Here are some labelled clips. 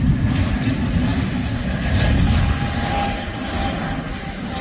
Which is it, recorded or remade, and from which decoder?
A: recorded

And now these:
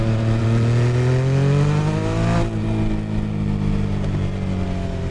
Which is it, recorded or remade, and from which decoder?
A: recorded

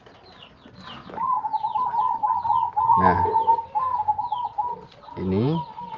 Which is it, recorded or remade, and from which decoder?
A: recorded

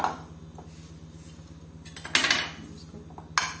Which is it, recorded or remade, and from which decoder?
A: recorded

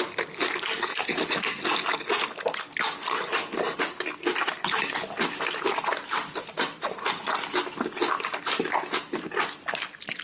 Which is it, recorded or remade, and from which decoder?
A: recorded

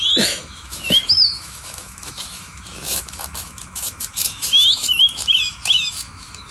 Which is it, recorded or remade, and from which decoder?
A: remade, autoencoder, DAC-VAE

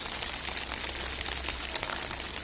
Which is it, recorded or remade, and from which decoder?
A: recorded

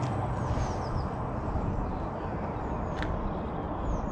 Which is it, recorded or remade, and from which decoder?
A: recorded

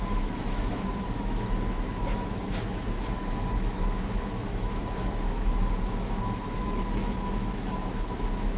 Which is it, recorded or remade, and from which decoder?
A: remade, autoencoder, DAC-VAE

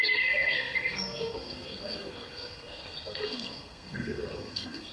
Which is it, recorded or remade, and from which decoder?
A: remade, codec, SNAC